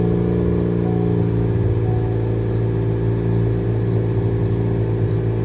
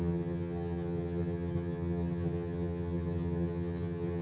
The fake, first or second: second